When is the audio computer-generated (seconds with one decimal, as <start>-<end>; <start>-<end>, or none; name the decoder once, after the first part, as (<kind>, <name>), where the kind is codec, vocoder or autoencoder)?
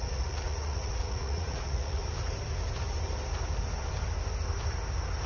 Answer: 0.0-2.0 (vocoder, Vocos)